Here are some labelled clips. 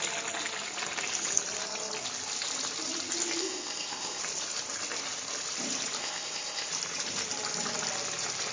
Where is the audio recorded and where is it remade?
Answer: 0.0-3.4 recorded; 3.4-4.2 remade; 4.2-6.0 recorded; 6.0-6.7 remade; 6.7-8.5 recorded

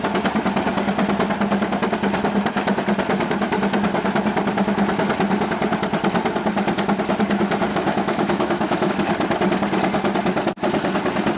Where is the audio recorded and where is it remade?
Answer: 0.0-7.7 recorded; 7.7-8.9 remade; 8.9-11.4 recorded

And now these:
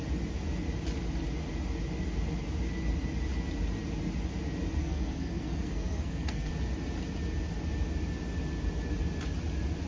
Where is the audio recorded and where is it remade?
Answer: 0.0-4.8 recorded; 4.8-6.5 remade; 6.5-9.9 recorded

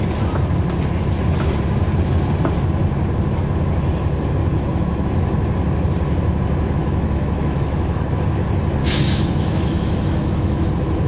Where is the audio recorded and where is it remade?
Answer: 0.0-6.8 recorded; 6.8-8.0 remade; 8.0-8.8 recorded; 8.8-10.7 remade; 10.7-11.1 recorded

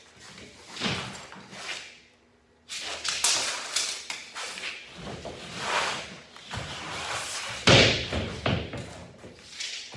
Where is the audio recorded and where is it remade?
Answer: 0.0-10.0 recorded

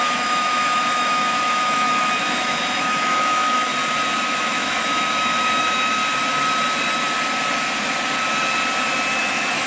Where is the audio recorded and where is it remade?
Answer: 0.0-3.7 remade; 3.7-4.2 recorded; 4.2-6.0 remade; 6.0-9.2 recorded; 9.2-9.7 remade

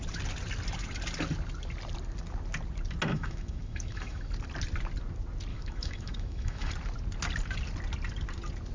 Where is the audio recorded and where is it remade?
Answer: 0.0-3.1 recorded; 3.1-4.3 remade; 4.3-5.5 recorded; 5.5-6.7 remade; 6.7-8.7 recorded